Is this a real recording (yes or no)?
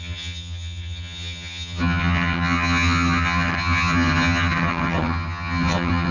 no